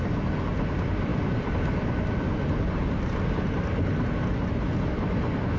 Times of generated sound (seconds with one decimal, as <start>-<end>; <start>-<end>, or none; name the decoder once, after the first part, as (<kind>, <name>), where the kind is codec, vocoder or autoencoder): none